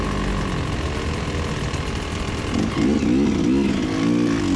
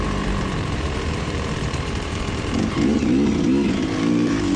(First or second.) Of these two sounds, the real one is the first